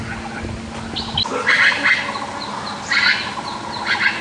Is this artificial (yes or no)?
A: no